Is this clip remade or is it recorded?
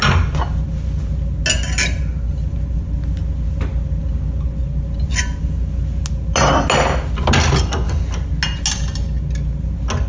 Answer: recorded